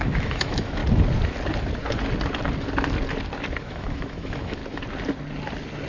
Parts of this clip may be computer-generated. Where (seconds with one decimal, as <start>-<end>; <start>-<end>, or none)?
0.0-0.8; 3.6-4.6